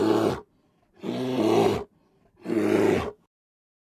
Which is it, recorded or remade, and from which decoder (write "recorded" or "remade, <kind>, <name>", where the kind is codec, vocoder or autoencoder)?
recorded